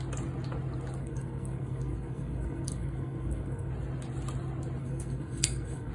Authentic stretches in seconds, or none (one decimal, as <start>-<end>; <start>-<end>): 0.0-1.0; 3.7-4.8